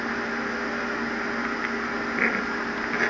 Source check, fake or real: real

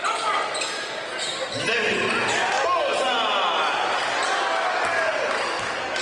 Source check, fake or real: real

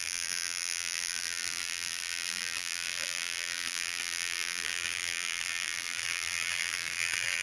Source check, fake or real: fake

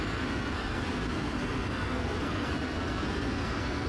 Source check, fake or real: fake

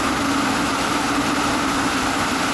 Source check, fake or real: real